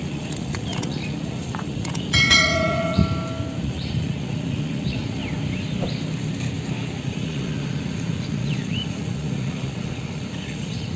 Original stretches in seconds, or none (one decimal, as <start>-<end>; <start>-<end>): 3.0-3.6; 5.2-7.0